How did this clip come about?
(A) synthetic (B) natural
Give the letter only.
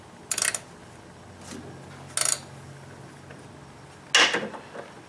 B